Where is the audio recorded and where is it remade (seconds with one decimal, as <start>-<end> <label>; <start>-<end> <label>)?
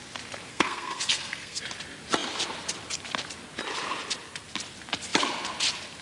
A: 0.0-0.5 recorded; 0.5-1.6 remade; 1.6-6.0 recorded